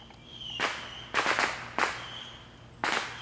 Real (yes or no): yes